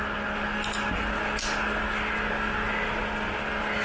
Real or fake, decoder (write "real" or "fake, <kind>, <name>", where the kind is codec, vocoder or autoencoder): real